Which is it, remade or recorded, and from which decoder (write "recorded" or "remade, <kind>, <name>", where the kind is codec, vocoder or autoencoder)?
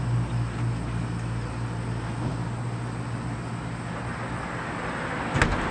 recorded